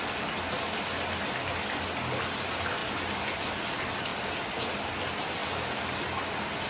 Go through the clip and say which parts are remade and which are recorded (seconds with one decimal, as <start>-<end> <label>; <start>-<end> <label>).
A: 0.0-6.7 recorded